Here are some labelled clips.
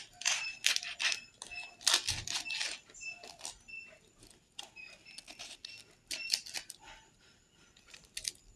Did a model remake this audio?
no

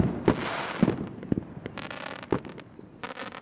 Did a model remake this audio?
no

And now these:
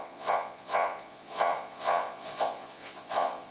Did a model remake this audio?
yes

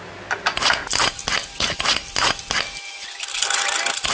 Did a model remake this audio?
no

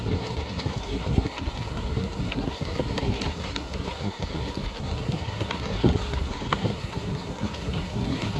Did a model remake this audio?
yes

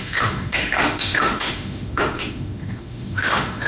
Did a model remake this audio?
yes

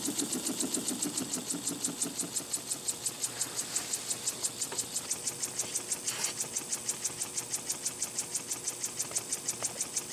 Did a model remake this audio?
no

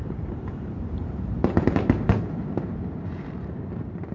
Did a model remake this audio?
yes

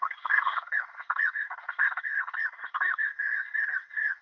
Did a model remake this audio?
yes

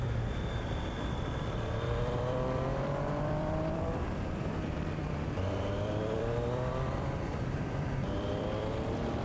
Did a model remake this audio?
yes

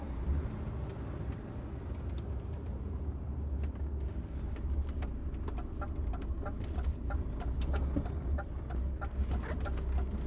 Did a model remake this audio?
no